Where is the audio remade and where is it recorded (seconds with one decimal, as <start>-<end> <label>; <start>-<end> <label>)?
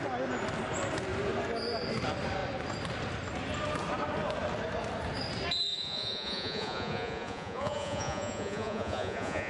0.0-5.7 recorded; 5.7-9.5 remade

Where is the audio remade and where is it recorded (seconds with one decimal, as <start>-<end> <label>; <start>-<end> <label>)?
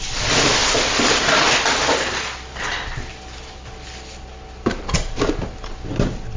0.0-6.4 recorded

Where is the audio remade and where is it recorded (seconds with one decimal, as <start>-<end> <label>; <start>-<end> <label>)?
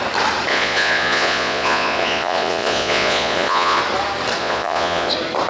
0.0-0.5 recorded; 0.5-3.8 remade; 3.8-4.4 recorded; 4.4-5.1 remade; 5.1-5.5 recorded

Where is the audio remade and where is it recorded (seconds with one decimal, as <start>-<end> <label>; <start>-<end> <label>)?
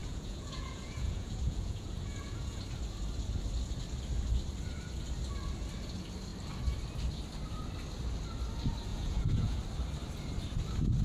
0.0-2.6 remade; 2.6-8.9 recorded; 8.9-9.6 remade; 9.6-11.0 recorded